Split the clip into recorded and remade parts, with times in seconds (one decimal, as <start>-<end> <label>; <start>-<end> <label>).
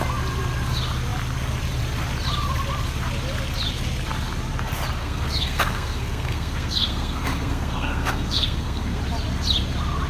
0.0-5.0 recorded; 5.0-9.0 remade; 9.0-10.1 recorded